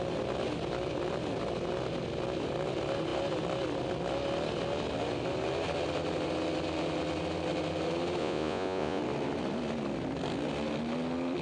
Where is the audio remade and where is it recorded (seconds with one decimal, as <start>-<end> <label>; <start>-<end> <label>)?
0.0-8.2 recorded; 8.2-9.0 remade; 9.0-11.4 recorded

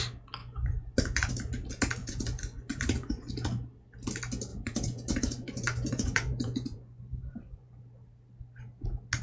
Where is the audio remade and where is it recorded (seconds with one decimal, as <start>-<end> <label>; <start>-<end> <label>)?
0.0-0.4 recorded; 0.4-1.3 remade; 1.3-2.0 recorded; 2.0-3.3 remade; 3.3-4.5 recorded; 4.5-7.8 remade; 7.8-9.2 recorded

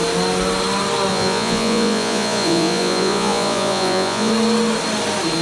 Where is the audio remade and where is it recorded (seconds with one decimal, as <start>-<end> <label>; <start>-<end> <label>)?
0.0-1.1 recorded; 1.1-4.3 remade; 4.3-5.4 recorded

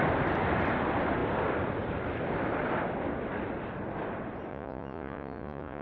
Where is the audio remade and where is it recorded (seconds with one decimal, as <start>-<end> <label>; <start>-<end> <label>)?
0.0-4.5 recorded; 4.5-5.8 remade